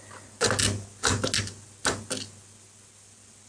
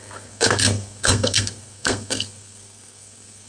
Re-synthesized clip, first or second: second